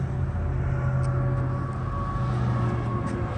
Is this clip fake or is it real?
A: real